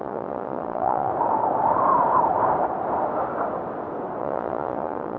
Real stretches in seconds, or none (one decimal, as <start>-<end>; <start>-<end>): 1.1-4.2